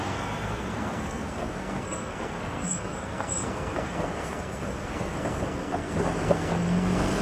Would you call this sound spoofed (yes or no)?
yes